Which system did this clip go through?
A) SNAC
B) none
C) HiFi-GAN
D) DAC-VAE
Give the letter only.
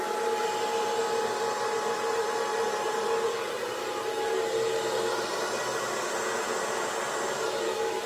B